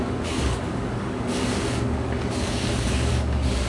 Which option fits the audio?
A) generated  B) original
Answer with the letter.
A